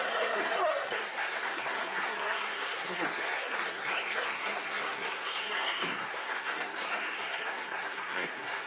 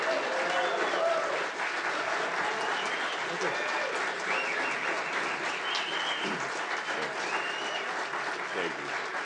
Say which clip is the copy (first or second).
first